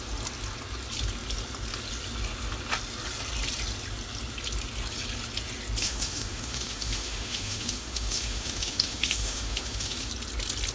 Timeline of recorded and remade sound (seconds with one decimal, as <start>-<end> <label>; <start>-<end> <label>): 0.0-5.8 recorded; 5.8-10.1 remade; 10.1-10.7 recorded